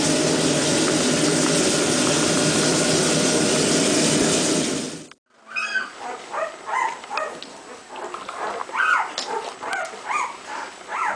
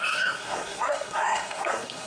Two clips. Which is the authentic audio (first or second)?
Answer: first